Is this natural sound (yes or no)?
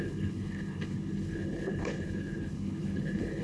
no